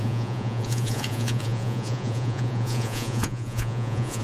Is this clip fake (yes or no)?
yes